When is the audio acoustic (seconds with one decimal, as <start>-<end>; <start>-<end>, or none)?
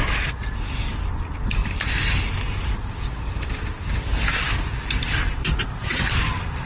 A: 0.0-6.7